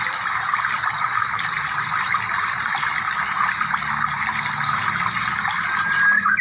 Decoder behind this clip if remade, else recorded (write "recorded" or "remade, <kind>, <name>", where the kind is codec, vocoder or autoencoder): recorded